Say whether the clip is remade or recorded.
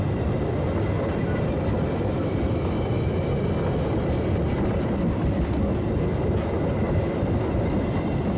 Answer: recorded